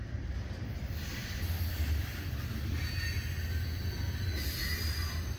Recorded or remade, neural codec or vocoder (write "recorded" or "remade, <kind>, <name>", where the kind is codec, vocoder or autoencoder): recorded